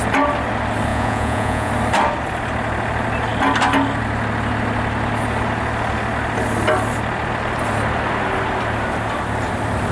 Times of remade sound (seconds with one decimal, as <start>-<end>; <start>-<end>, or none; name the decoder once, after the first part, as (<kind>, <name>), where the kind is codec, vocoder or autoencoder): 0.9-1.7 (vocoder, Vocos)